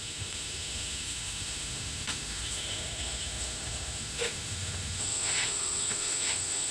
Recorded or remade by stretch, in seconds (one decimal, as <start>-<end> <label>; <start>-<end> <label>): 0.0-6.7 remade

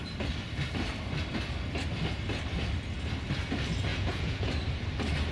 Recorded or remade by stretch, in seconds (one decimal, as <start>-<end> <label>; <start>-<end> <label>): 0.0-3.9 recorded; 3.9-4.5 remade; 4.5-5.3 recorded

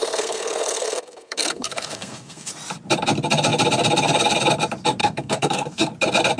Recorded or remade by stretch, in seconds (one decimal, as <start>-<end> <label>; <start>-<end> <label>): 0.0-2.5 remade; 2.5-5.0 recorded; 5.0-5.9 remade; 5.9-6.4 recorded

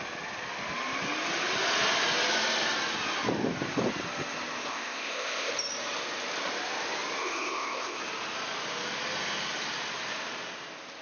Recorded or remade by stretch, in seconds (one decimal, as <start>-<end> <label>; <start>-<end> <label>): 0.0-4.7 recorded; 4.7-5.5 remade; 5.5-7.2 recorded; 7.2-8.0 remade; 8.0-11.0 recorded

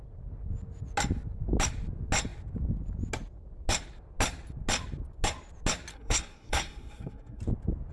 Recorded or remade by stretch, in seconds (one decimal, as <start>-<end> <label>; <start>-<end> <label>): 0.0-5.9 recorded; 5.9-7.4 remade; 7.4-7.9 recorded

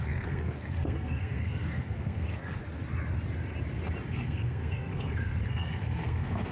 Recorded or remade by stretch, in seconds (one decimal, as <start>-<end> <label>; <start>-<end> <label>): 0.0-2.6 remade; 2.6-4.1 recorded; 4.1-6.5 remade